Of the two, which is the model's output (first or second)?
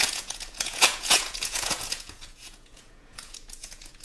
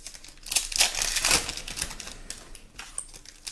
first